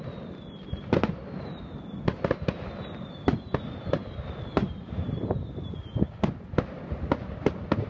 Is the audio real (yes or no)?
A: yes